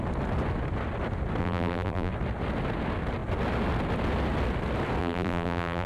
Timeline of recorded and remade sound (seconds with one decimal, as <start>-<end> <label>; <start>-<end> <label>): 0.0-1.4 recorded; 1.4-2.1 remade; 2.1-5.0 recorded; 5.0-5.9 remade